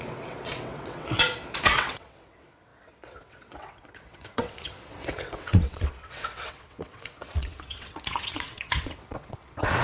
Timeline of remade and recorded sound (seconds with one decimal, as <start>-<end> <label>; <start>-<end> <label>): 0.0-9.8 remade

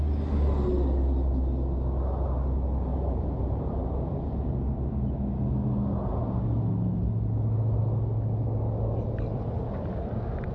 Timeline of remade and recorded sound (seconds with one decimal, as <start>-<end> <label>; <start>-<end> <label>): 0.0-2.9 recorded; 2.9-4.9 remade; 4.9-10.5 recorded

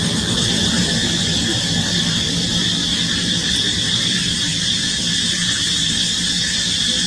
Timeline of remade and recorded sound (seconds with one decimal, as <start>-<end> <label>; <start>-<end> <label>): 0.0-4.5 recorded; 4.5-5.0 remade; 5.0-7.1 recorded

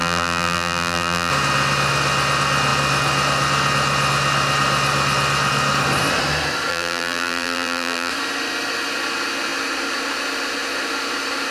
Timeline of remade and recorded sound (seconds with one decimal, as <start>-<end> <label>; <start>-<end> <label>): 0.0-1.3 remade; 1.3-6.7 recorded; 6.7-8.1 remade; 8.1-11.5 recorded